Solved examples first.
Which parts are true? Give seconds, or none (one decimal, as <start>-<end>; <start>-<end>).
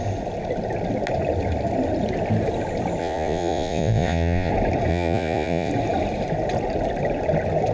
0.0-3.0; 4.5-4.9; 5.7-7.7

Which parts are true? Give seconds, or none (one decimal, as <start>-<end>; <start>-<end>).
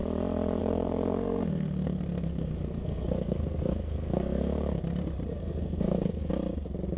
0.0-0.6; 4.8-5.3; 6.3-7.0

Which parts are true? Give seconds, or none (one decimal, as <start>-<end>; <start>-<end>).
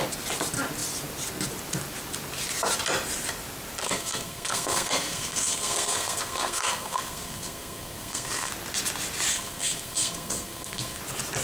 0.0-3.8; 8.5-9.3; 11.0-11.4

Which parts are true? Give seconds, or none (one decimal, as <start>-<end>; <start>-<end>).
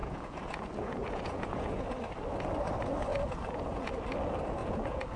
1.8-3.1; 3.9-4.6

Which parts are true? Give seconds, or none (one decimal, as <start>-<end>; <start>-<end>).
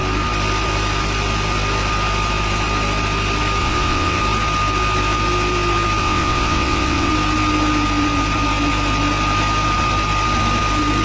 0.0-3.6; 4.2-6.0; 7.1-11.0